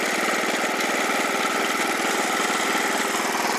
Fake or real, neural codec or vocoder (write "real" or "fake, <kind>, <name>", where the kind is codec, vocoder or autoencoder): real